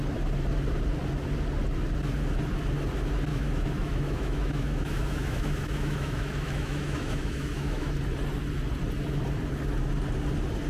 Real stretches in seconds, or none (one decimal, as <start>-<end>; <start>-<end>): 0.0-3.3; 7.9-10.7